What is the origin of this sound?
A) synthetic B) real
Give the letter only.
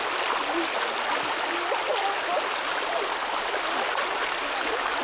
B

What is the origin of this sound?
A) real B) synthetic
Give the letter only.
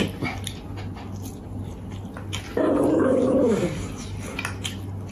A